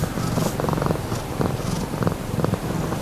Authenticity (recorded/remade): recorded